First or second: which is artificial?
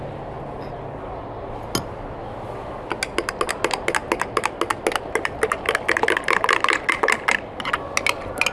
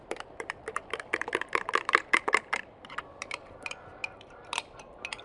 second